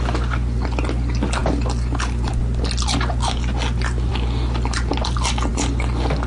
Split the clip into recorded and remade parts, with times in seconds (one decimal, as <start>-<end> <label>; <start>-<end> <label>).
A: 0.0-1.4 recorded; 1.4-2.3 remade; 2.3-4.1 recorded; 4.1-4.9 remade; 4.9-6.3 recorded